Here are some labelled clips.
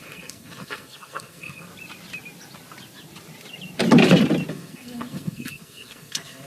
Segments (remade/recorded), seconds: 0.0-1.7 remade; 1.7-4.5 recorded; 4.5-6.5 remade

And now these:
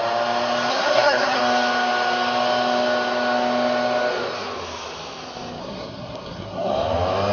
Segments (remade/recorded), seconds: 0.0-0.7 recorded; 0.7-1.4 remade; 1.4-5.6 recorded; 5.6-6.7 remade; 6.7-7.3 recorded

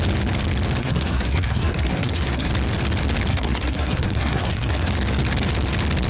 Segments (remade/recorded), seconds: 0.0-0.8 recorded; 0.8-2.5 remade; 2.5-3.3 recorded; 3.3-4.9 remade; 4.9-6.1 recorded

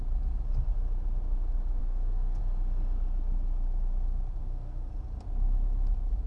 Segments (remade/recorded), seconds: 0.0-1.8 recorded; 1.8-2.4 remade; 2.4-4.4 recorded; 4.4-4.9 remade; 4.9-6.3 recorded

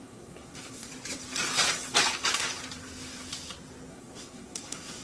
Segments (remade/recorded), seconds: 0.0-0.9 remade; 0.9-3.9 recorded; 3.9-5.0 remade